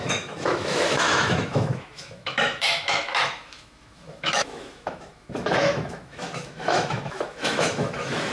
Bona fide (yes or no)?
no